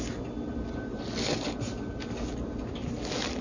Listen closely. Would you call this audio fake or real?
real